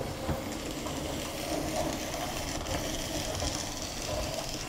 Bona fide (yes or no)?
yes